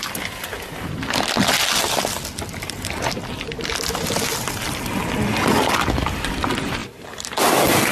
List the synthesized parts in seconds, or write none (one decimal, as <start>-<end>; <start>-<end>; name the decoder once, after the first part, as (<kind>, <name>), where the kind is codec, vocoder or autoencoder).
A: 0.0-7.9 (vocoder, BigVGAN v2)